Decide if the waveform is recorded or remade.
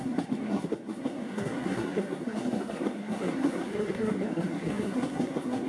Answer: remade